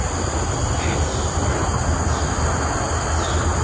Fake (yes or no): no